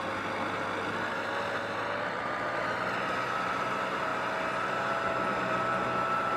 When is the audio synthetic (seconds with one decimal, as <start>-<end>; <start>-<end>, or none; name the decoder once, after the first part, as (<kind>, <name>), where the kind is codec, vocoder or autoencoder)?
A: none

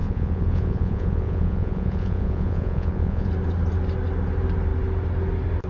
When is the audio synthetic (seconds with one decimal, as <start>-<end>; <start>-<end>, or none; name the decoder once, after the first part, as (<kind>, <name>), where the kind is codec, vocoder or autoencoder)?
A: 0.0-3.3 (vocoder, Vocos)

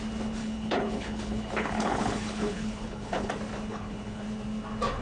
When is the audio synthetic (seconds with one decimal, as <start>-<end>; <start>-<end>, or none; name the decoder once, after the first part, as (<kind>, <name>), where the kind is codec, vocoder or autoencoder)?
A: 0.4-3.3 (codec, HILCodec); 3.7-4.2